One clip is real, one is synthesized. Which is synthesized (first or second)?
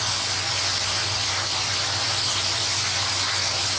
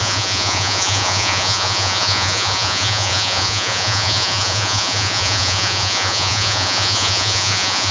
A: second